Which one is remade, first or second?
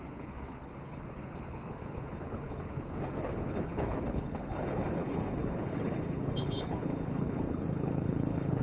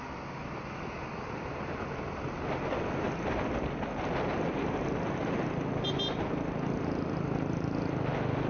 first